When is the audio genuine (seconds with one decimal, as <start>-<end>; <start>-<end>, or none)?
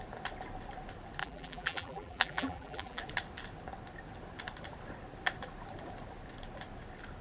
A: 0.0-1.2; 3.0-7.2